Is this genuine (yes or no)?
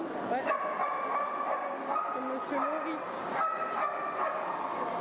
yes